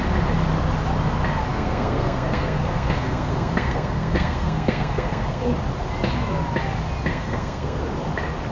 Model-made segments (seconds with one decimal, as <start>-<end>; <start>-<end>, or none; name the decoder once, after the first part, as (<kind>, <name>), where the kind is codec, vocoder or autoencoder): 1.5-5.5 (codec, SNAC); 7.1-7.8